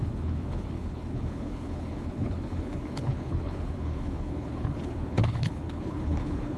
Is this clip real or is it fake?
fake